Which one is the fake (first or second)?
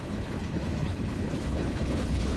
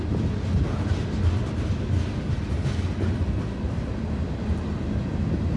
first